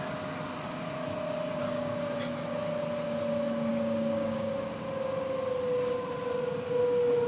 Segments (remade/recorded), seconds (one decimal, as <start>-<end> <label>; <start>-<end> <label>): 0.0-1.6 recorded; 1.6-2.3 remade; 2.3-3.7 recorded; 3.7-4.8 remade; 4.8-7.3 recorded

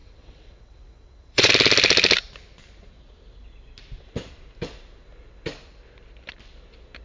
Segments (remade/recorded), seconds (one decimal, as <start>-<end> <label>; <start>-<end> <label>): 0.0-1.5 remade; 1.5-7.0 recorded

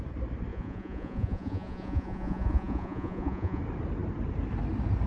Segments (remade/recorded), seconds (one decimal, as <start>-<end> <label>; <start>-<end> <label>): 0.0-0.5 recorded; 0.5-3.6 remade; 3.6-5.1 recorded

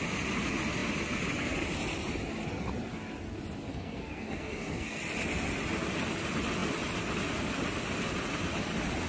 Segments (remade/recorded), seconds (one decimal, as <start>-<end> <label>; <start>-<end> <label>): 0.0-3.7 recorded; 3.7-5.0 remade; 5.0-9.1 recorded